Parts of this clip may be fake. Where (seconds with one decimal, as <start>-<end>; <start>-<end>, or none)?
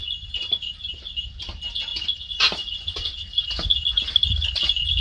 none